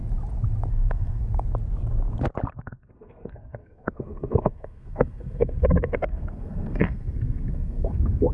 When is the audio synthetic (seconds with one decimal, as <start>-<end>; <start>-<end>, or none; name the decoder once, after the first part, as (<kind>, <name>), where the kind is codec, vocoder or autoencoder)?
0.7-1.2 (codec, SNAC); 2.5-8.3